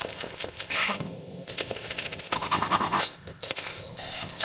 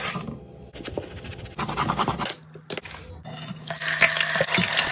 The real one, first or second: second